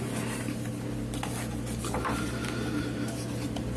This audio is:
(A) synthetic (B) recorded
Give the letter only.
B